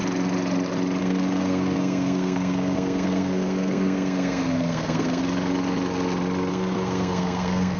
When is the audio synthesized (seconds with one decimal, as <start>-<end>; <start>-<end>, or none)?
1.0-5.2; 6.5-7.8